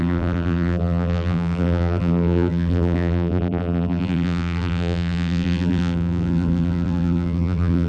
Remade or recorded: remade